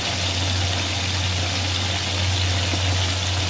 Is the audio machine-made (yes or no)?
no